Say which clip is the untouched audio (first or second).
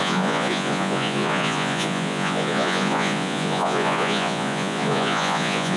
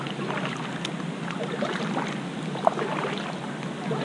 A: second